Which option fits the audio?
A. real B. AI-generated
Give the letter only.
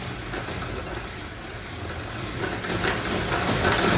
A